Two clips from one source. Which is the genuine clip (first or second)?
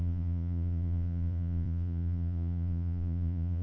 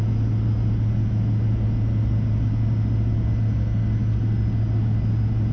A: second